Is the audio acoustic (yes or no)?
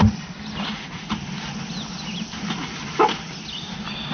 yes